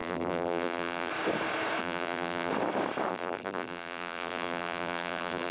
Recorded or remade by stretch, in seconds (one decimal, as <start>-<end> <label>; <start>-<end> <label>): 0.0-1.1 remade; 1.1-1.8 recorded; 1.8-2.5 remade; 2.5-3.1 recorded; 3.1-5.5 remade